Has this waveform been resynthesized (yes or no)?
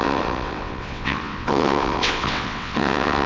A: yes